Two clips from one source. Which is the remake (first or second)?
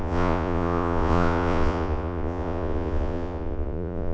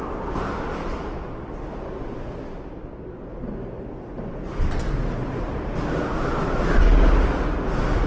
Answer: first